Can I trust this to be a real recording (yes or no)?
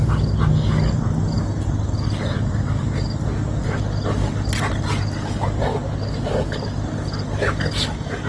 yes